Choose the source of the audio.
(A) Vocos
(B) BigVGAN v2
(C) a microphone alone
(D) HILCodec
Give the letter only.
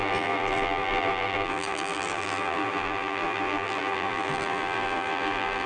B